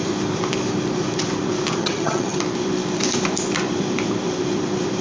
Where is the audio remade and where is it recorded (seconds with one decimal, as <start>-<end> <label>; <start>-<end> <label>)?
0.0-1.8 recorded; 1.8-2.4 remade; 2.4-5.0 recorded